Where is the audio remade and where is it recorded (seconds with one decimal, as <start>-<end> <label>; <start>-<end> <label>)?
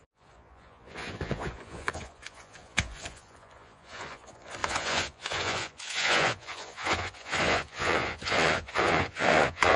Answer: 0.0-9.8 remade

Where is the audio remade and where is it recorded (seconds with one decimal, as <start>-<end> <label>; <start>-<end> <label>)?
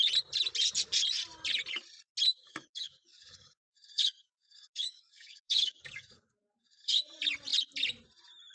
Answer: 0.0-2.3 recorded; 2.3-7.0 remade; 7.0-8.5 recorded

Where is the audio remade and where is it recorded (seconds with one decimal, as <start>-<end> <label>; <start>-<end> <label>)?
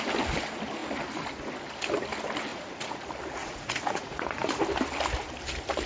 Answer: 0.0-2.5 recorded; 2.5-3.0 remade; 3.0-3.4 recorded; 3.4-4.5 remade; 4.5-5.9 recorded